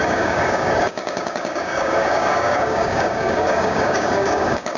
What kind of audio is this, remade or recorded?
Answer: remade